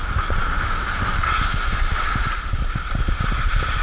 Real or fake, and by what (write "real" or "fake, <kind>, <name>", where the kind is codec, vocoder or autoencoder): real